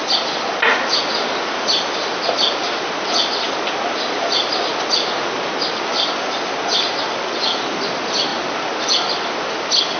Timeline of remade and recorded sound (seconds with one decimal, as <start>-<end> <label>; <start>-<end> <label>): 0.0-10.0 recorded